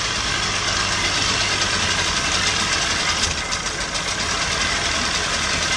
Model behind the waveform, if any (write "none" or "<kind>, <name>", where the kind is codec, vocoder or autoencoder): none